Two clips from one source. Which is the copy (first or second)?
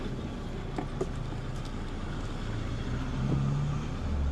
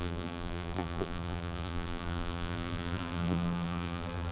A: second